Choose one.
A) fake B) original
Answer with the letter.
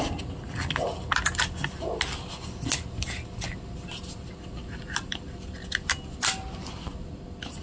B